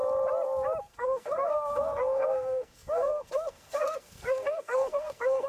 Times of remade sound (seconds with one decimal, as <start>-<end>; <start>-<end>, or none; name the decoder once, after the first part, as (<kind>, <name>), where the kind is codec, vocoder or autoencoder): 0.8-5.5 (codec, SNAC)